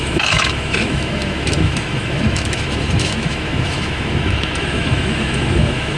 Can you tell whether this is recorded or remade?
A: remade